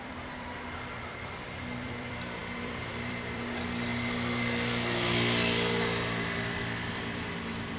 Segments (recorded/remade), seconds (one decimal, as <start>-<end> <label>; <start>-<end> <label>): 0.0-3.9 remade; 3.9-6.9 recorded; 6.9-7.8 remade